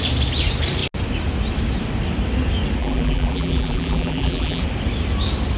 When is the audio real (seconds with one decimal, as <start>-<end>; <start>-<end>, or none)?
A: 0.0-2.8; 4.6-5.6